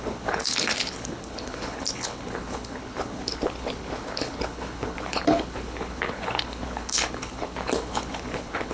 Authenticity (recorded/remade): remade